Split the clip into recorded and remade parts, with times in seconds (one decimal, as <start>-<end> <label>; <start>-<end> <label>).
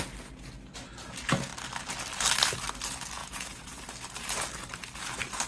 0.0-3.2 recorded; 3.2-3.8 remade; 3.8-5.5 recorded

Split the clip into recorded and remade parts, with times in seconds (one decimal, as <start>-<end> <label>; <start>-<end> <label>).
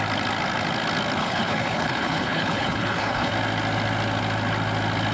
0.0-1.2 recorded; 1.2-3.3 remade; 3.3-5.1 recorded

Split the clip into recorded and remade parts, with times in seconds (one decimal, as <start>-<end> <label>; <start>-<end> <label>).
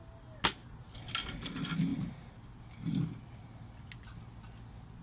0.0-5.0 recorded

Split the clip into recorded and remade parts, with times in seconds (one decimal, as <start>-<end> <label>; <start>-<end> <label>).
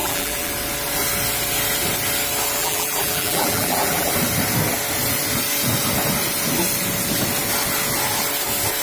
0.0-0.5 remade; 0.5-2.6 recorded; 2.6-4.1 remade; 4.1-8.8 recorded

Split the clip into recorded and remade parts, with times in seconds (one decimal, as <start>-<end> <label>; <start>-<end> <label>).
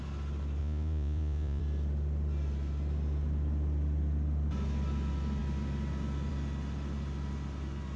0.0-0.6 recorded; 0.6-1.6 remade; 1.6-8.0 recorded